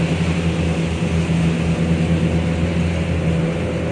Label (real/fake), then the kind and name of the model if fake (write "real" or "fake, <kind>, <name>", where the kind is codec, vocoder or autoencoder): real